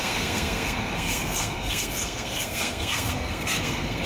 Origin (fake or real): fake